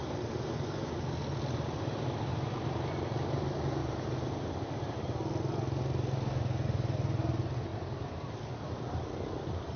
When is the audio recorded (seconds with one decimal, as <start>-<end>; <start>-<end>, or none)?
0.0-3.8; 4.4-9.8